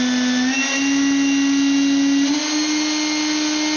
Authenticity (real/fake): real